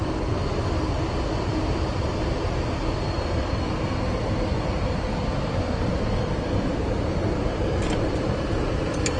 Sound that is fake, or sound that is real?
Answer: real